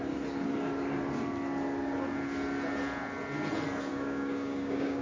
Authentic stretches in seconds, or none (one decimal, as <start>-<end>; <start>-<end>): 0.0-3.9